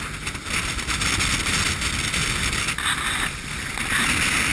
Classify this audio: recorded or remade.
recorded